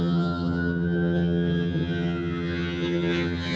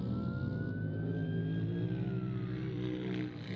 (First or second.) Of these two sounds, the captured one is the second